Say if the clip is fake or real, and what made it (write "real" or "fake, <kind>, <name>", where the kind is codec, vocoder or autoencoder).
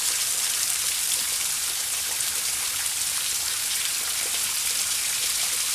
real